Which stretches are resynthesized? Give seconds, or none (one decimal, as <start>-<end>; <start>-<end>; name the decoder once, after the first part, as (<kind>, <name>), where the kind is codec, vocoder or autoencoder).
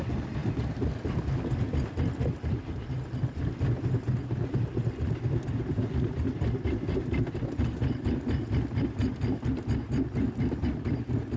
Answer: none